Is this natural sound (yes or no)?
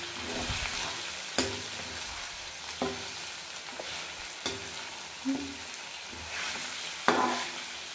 yes